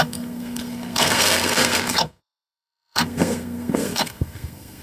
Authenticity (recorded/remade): remade